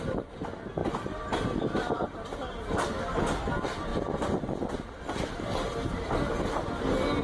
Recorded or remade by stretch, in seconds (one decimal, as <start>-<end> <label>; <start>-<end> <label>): 0.0-7.2 recorded